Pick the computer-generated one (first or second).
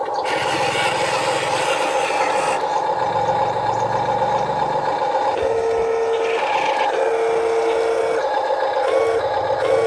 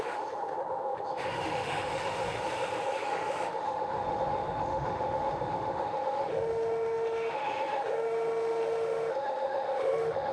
second